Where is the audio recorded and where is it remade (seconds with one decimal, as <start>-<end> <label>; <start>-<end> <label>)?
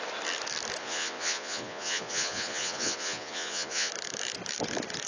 0.0-0.8 recorded; 0.8-3.9 remade; 3.9-5.1 recorded